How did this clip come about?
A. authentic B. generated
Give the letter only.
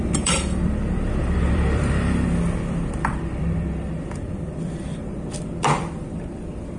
B